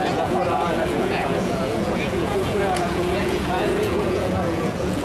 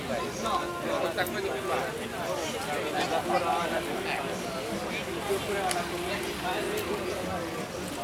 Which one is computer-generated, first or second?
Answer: first